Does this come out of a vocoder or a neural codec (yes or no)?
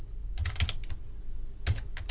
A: no